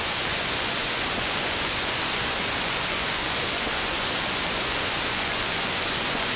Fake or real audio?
fake